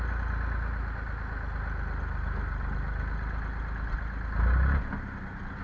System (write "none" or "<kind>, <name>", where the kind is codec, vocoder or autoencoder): none